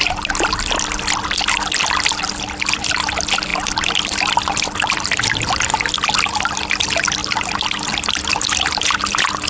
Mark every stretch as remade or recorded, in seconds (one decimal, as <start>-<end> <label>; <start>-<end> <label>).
0.0-9.5 recorded